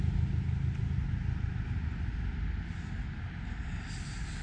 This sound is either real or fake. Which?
real